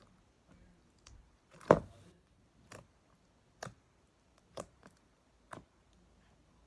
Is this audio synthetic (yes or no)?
no